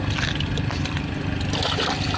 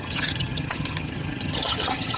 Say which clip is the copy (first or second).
second